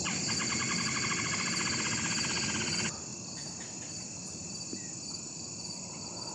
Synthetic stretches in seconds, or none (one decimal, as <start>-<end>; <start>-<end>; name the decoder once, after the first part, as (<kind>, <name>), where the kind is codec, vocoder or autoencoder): 3.1-4.7 (vocoder, BigVGAN v2)